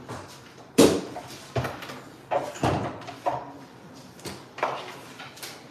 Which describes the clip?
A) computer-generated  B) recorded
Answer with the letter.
B